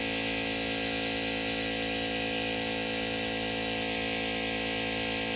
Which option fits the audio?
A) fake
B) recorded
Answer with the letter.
B